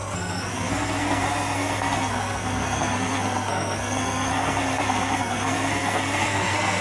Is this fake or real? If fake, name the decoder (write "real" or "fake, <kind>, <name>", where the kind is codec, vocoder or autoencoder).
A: fake, codec, SNAC